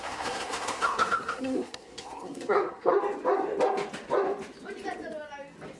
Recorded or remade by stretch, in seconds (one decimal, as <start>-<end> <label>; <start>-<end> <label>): 0.0-2.9 remade; 2.9-5.8 recorded